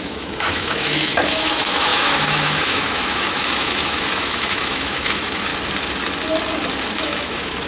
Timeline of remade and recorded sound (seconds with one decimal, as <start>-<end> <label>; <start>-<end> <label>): 0.0-5.5 remade; 5.5-6.9 recorded; 6.9-7.7 remade